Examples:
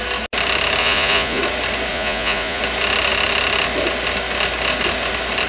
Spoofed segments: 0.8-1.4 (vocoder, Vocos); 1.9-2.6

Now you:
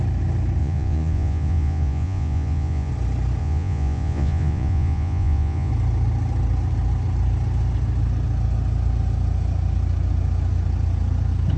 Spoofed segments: 0.6-2.9 (vocoder, Vocos); 3.4-5.7

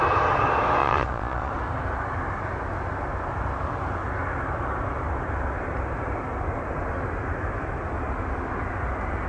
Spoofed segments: 0.8-1.5 (vocoder, Vocos)

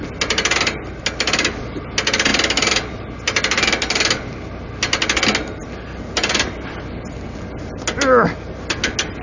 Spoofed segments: none

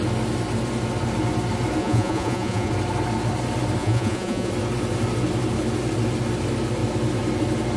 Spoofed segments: 1.8-2.7 (vocoder, Vocos); 3.8-4.5

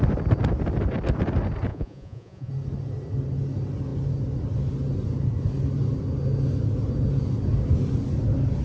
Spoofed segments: 1.7-2.5 (vocoder, Vocos)

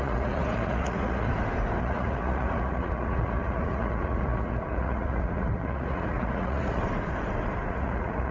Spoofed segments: 0.0-1.3 (vocoder, Vocos); 1.8-6.8; 7.7-8.3

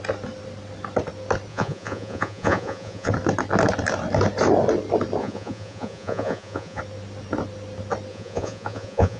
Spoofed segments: 1.5-3.1 (vocoder, Vocos); 5.2-6.8; 8.1-9.2